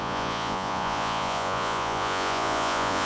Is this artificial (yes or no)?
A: yes